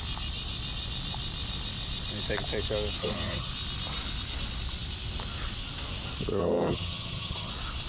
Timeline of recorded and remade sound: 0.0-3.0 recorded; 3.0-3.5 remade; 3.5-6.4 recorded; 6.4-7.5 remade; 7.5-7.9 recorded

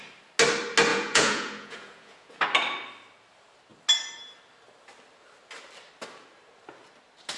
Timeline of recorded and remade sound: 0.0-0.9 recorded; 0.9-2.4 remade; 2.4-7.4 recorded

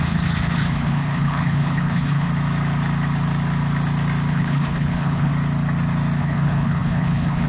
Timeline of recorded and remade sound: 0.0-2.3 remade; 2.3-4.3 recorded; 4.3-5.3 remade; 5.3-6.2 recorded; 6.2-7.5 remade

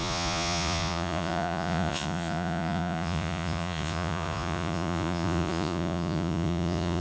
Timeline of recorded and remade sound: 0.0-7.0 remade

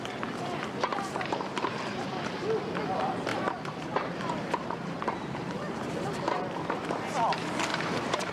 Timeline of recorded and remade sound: 0.0-3.3 recorded; 3.3-5.9 remade; 5.9-7.7 recorded; 7.7-8.3 remade

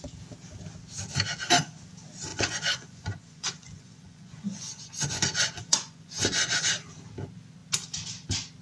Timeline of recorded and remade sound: 0.0-2.3 recorded; 2.3-6.7 remade; 6.7-8.6 recorded

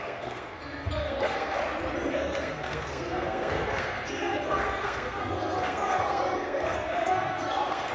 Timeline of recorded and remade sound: 0.0-1.6 remade; 1.6-2.1 recorded; 2.1-7.9 remade

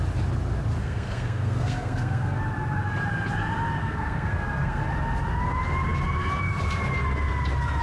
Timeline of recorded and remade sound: 0.0-0.8 recorded; 0.8-2.4 remade; 2.4-3.8 recorded; 3.8-4.8 remade; 4.8-7.8 recorded